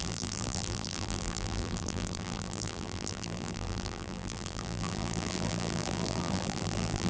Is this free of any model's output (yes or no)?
no